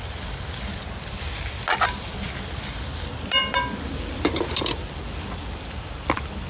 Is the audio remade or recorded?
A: remade